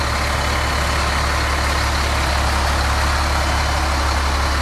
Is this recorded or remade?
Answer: recorded